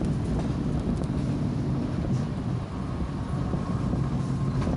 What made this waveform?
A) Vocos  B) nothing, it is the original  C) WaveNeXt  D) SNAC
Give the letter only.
B